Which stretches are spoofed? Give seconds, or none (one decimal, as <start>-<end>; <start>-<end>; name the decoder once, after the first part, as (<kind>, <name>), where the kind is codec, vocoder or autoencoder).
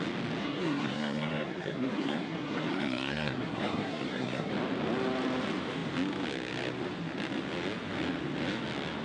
0.4-4.5 (codec, SNAC)